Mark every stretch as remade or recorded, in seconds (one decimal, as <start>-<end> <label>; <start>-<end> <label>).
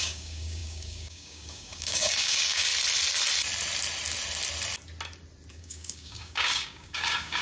0.0-2.7 remade; 2.7-5.5 recorded; 5.5-7.4 remade